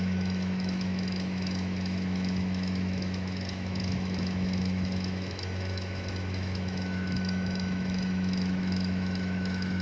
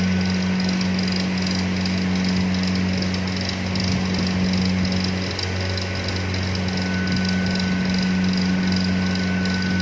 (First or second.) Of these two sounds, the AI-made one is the first